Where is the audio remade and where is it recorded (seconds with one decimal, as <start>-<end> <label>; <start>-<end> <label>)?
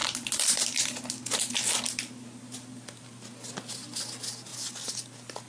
0.0-5.5 recorded